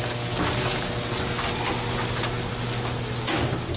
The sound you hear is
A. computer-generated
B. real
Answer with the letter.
B